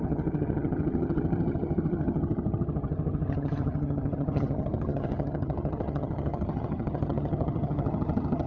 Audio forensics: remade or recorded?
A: remade